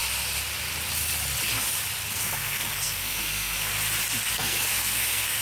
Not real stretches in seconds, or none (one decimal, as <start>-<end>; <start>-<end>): 2.1-3.7; 4.3-5.4